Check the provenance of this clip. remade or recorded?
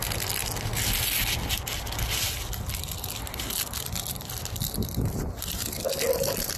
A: recorded